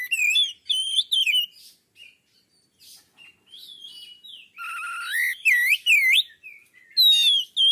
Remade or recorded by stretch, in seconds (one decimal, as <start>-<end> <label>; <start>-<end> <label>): 0.0-7.7 recorded

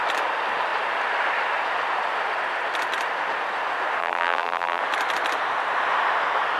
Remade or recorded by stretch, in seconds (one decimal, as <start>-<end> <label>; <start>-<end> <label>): 0.0-4.0 recorded; 4.0-4.8 remade; 4.8-6.6 recorded

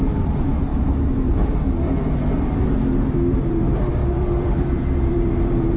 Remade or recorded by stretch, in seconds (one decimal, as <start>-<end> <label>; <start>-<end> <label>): 0.0-5.8 remade

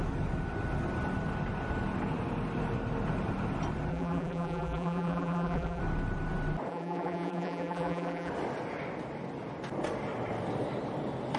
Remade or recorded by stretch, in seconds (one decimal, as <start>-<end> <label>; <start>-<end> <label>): 0.0-3.9 recorded; 3.9-5.8 remade; 5.8-6.7 recorded; 6.7-8.3 remade; 8.3-11.4 recorded